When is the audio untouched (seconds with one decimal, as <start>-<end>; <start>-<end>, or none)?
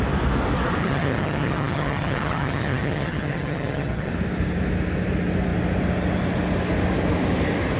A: 0.0-0.8; 4.1-7.8